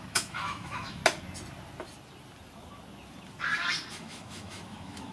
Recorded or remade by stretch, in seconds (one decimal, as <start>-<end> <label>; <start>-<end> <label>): 0.0-1.0 remade; 1.0-3.9 recorded; 3.9-5.1 remade